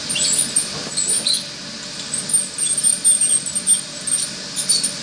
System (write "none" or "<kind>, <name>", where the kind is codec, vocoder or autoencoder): none